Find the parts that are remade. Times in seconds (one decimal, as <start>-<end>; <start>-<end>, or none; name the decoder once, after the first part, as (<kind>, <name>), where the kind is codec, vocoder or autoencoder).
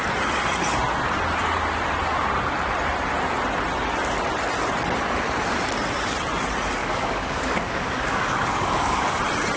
6.8-9.2 (codec, DAC)